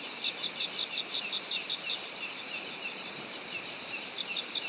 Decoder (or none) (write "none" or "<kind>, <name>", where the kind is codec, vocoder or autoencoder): vocoder, BigVGAN v2